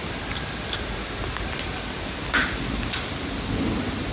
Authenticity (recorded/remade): recorded